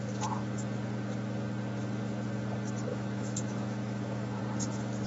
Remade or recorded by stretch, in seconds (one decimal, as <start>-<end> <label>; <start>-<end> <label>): 0.0-2.9 recorded; 2.9-4.4 remade; 4.4-5.1 recorded